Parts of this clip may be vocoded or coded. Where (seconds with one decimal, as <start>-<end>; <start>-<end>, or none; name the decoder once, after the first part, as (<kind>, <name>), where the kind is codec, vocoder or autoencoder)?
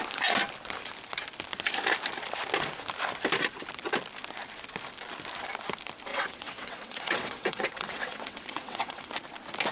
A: 6.1-9.1 (vocoder, WaveNeXt)